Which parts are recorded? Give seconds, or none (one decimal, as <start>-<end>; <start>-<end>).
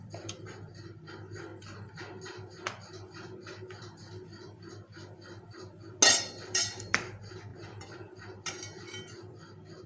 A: 1.5-6.1; 7.5-9.9